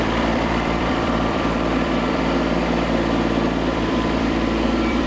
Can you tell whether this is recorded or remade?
remade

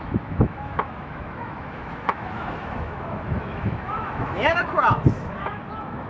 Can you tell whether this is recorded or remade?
remade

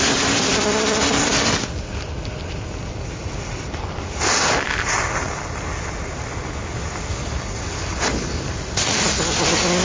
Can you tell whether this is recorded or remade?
recorded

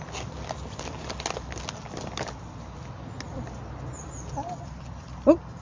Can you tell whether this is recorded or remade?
recorded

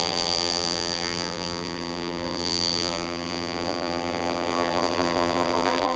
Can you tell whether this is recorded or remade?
remade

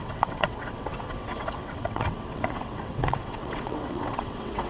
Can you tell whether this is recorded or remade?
remade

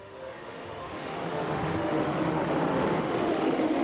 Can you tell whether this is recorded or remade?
remade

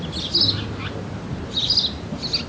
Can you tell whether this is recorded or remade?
recorded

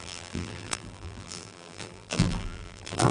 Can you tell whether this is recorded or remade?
remade